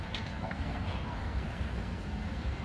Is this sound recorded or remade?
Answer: remade